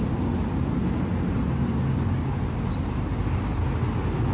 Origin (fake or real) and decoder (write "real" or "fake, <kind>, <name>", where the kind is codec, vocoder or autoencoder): real